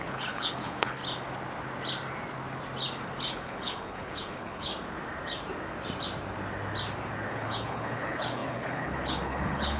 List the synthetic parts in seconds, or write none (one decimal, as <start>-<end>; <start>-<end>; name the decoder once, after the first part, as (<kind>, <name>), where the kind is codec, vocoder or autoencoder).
0.0-1.0 (codec, HILCodec); 3.3-4.7; 7.3-9.8